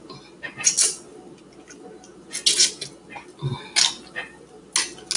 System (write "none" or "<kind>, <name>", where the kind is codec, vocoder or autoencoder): none